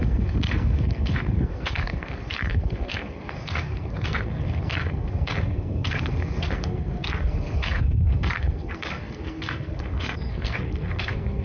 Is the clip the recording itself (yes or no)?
no